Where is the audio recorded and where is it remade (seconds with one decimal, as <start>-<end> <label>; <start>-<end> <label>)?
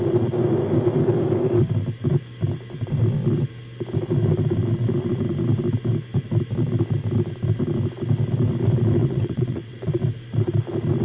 0.0-9.0 recorded; 9.0-9.8 remade; 9.8-11.0 recorded